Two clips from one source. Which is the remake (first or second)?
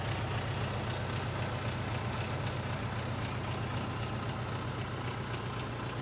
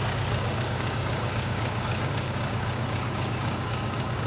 second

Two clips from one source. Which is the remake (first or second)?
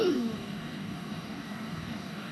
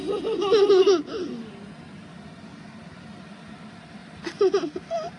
first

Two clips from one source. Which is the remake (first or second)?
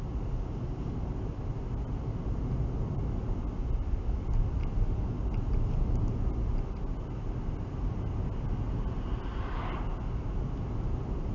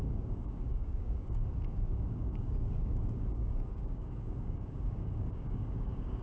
second